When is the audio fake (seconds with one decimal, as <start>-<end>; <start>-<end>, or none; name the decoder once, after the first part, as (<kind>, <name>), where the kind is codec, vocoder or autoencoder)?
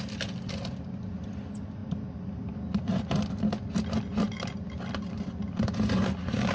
none